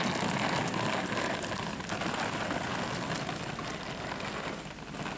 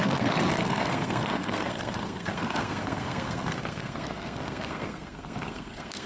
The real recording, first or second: first